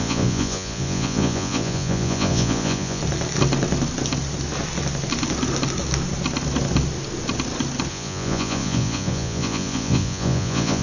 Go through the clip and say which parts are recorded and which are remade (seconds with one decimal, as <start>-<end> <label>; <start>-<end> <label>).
0.0-3.0 remade; 3.0-7.9 recorded; 7.9-10.8 remade